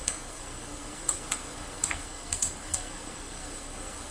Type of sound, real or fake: fake